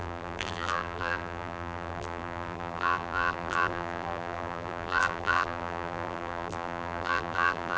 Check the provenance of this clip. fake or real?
fake